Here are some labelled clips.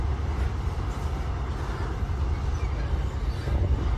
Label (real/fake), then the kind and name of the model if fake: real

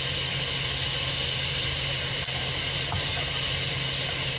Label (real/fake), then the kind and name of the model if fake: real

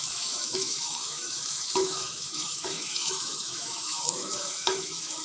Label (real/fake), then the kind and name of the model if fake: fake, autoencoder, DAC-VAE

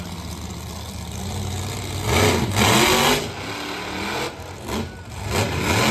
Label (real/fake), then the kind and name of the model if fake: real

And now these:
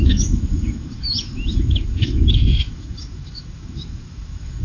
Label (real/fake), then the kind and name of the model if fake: fake, autoencoder, DAC-VAE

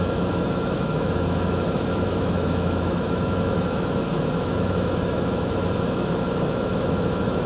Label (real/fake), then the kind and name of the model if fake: fake, autoencoder, DAC-VAE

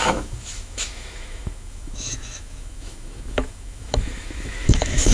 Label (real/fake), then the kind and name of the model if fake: fake, autoencoder, DAC-VAE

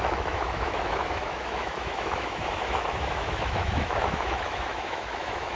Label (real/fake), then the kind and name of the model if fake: fake, autoencoder, DAC-VAE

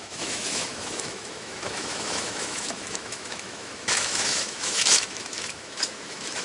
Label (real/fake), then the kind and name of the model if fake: fake, autoencoder, DAC-VAE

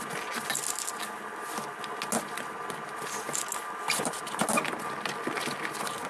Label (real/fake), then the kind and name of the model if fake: real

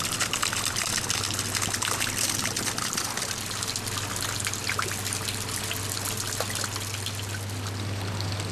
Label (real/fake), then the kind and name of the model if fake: real